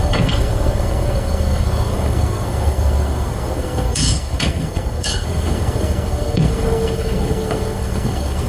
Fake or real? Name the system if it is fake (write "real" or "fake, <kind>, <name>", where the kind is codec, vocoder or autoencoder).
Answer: fake, codec, SNAC